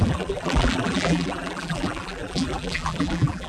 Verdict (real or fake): fake